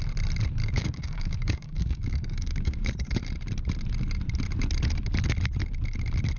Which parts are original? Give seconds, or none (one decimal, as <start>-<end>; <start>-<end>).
0.0-0.6; 2.9-6.4

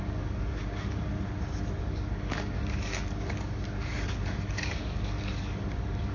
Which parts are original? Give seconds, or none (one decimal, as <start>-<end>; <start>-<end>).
1.1-1.8

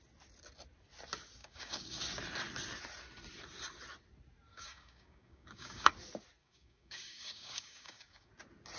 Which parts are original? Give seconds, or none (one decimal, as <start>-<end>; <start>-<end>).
0.0-1.4; 2.0-4.5; 5.9-6.4; 8.3-8.8

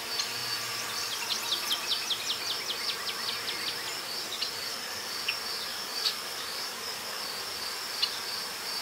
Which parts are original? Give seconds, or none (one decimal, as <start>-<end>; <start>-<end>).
0.0-4.7; 5.2-5.7; 7.2-8.8

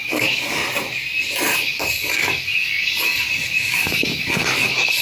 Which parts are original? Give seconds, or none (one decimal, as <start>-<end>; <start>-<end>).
0.6-1.6

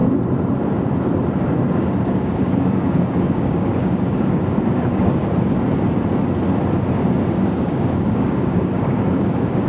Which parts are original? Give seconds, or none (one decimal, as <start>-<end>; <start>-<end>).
0.0-1.7; 5.2-7.1

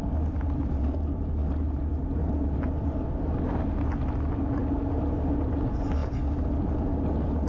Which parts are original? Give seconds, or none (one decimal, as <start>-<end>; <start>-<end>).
0.0-7.5

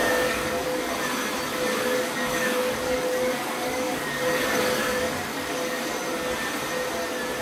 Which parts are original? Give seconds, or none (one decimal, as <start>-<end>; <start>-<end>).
0.9-1.5; 5.9-7.4